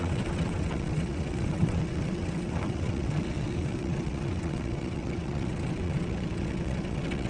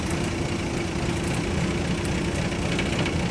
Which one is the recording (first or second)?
second